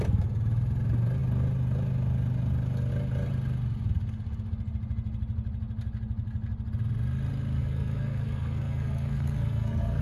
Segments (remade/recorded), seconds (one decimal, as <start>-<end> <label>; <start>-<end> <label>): 0.0-7.6 recorded; 7.6-10.0 remade